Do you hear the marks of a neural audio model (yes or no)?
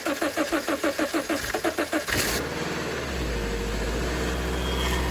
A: no